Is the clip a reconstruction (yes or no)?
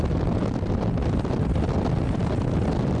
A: no